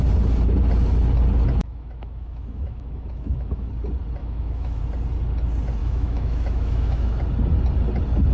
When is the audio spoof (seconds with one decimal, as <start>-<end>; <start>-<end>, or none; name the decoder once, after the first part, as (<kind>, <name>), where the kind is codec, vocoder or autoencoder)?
1.6-3.7 (autoencoder, DAC-VAE); 4.2-4.8; 5.8-7.2